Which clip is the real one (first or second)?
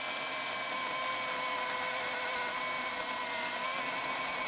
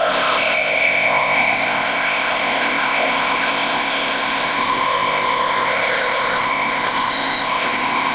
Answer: first